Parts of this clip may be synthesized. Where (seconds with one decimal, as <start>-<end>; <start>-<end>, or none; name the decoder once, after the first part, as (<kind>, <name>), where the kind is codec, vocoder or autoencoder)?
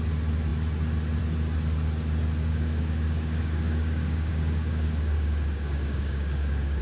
2.5-6.8 (codec, DAC)